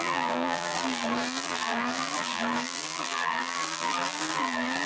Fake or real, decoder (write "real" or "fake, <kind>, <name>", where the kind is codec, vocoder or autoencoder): fake, vocoder, BigVGAN v2